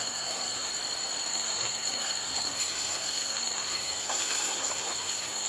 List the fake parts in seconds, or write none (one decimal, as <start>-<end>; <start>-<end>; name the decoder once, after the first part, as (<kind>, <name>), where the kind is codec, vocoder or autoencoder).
0.0-0.7 (codec, SNAC); 1.3-5.5